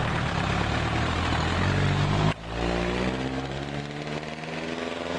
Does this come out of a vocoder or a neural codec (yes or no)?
no